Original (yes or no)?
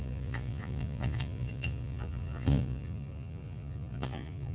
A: no